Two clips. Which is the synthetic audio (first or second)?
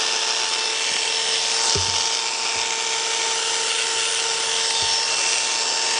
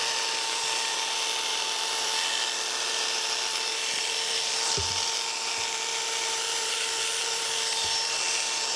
second